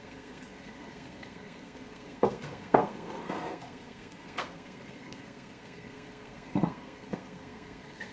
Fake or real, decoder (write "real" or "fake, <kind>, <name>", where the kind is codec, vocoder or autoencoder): fake, codec, SNAC